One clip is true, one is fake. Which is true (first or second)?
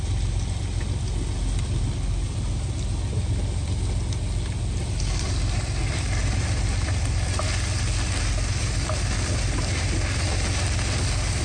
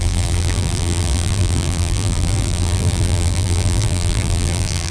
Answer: first